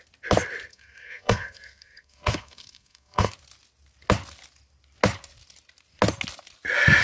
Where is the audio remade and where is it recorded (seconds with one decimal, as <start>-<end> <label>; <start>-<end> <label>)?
0.0-0.7 recorded; 0.7-3.3 remade; 3.3-7.0 recorded